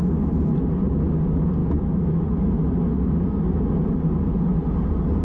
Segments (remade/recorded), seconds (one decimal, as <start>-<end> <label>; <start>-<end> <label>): 0.0-1.6 recorded; 1.6-3.7 remade; 3.7-5.2 recorded